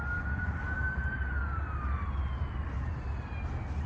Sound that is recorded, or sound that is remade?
recorded